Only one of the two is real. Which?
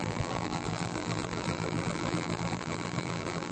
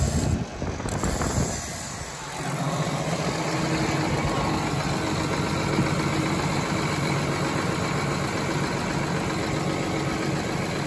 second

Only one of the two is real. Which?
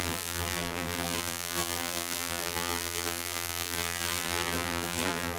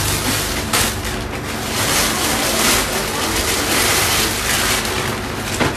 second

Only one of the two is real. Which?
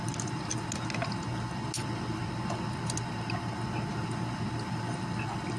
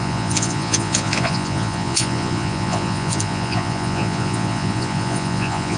first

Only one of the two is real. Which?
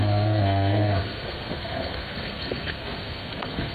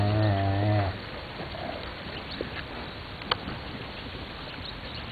second